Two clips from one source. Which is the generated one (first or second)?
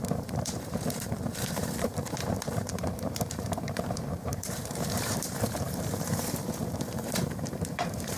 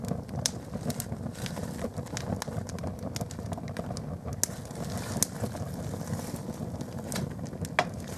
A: first